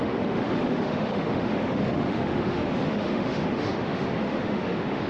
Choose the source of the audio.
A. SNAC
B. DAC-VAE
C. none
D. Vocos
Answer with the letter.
B